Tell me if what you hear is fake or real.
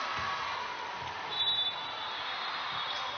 real